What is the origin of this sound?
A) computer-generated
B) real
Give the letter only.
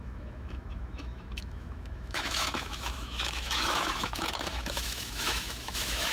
A